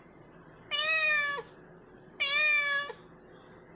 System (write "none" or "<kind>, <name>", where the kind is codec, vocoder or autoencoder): none